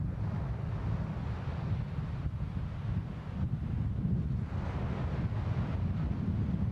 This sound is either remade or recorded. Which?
recorded